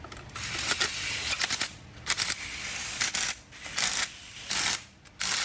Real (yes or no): yes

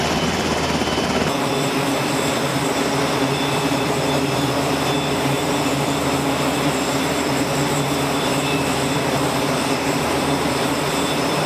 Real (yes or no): no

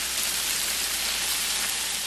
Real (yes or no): yes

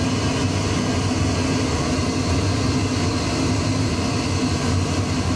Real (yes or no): yes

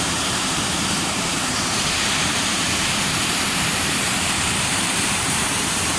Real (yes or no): no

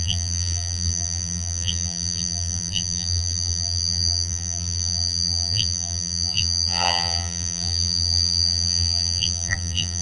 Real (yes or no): no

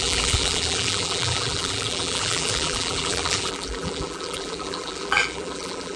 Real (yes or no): no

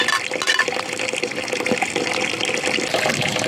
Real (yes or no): yes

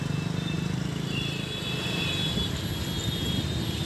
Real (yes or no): yes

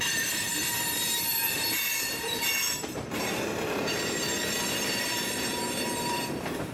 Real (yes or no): no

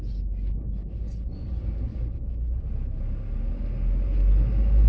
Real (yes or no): yes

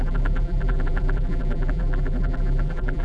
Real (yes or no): no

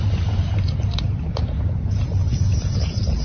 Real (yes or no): no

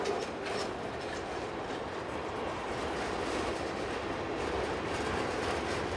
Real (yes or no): no